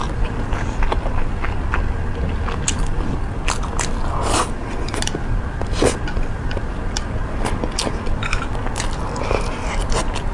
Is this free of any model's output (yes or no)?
yes